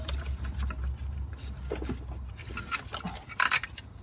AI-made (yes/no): no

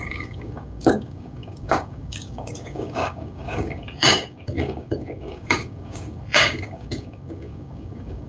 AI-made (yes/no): yes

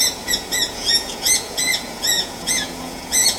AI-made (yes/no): yes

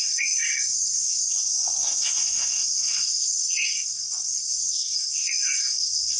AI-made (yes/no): yes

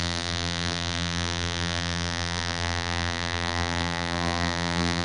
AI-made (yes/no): yes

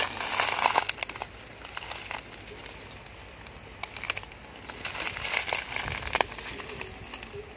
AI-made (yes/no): no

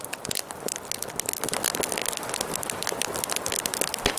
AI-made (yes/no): no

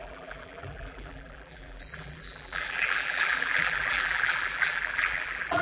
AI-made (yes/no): yes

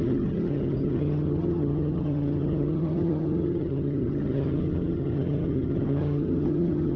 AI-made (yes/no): yes